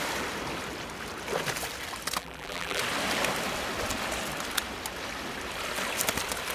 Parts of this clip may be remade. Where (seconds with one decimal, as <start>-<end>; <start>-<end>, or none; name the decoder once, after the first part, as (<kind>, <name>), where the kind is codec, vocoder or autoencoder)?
2.2-2.8 (vocoder, BigVGAN v2)